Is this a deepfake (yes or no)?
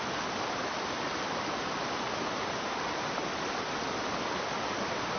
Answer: no